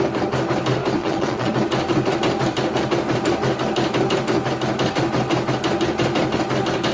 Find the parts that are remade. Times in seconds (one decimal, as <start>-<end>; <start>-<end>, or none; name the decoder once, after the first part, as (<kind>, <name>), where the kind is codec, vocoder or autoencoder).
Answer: 1.0-1.5 (vocoder, Vocos)